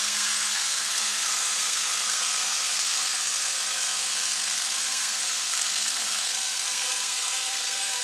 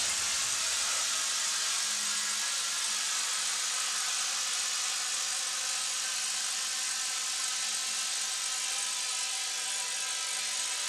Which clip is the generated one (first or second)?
first